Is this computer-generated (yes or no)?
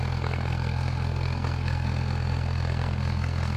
yes